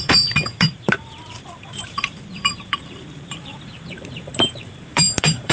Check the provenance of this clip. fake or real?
fake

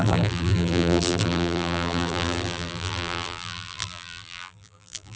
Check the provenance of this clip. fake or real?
fake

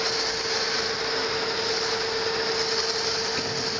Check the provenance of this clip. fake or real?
real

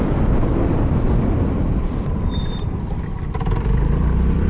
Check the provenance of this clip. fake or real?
fake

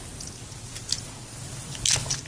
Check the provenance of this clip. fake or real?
real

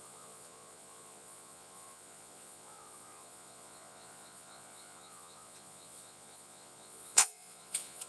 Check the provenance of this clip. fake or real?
fake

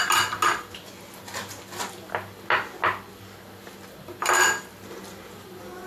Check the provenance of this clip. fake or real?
real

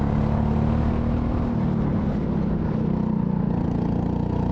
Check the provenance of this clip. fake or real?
real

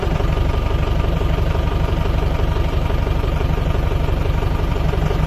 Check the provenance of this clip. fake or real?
fake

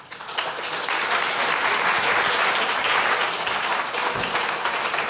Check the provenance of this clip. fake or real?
real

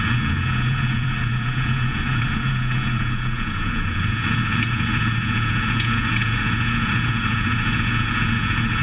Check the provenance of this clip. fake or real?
fake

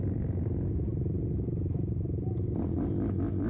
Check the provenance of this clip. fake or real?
real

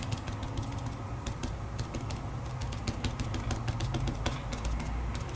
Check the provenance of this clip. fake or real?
real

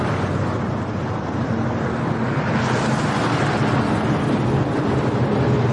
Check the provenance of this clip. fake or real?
real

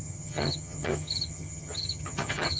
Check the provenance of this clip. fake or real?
fake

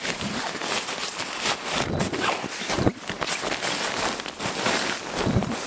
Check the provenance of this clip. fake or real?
real